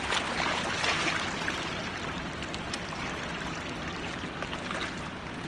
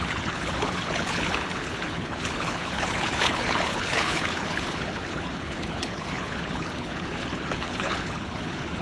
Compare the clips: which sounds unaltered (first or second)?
first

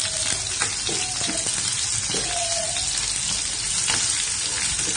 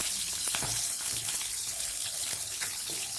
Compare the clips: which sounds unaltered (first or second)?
first